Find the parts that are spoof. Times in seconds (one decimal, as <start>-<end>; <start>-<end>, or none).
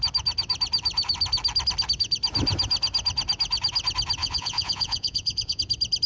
4.2-5.6